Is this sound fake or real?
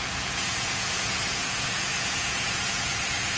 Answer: fake